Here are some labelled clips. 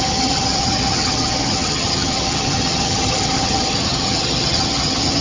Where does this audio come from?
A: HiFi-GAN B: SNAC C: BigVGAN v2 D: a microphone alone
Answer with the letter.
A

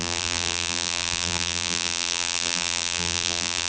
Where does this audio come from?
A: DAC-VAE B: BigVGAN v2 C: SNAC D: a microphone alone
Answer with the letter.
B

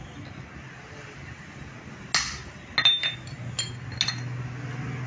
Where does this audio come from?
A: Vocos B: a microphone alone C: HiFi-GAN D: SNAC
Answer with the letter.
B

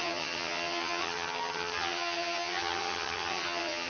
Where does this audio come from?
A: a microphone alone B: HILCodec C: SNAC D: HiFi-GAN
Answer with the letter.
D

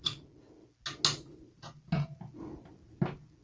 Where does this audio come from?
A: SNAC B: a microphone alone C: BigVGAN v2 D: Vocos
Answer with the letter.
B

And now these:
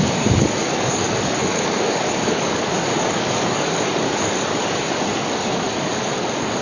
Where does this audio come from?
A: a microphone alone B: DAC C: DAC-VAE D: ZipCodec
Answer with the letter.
B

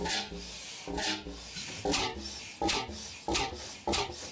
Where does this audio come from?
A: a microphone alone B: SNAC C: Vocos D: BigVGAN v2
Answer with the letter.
A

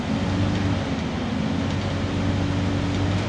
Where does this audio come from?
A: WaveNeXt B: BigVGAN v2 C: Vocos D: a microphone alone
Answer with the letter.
D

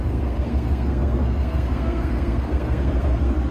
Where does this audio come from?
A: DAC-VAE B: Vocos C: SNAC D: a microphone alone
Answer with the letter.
C